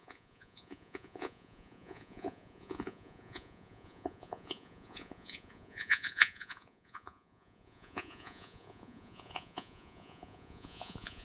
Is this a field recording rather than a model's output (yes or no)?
no